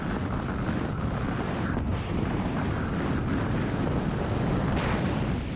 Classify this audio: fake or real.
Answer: real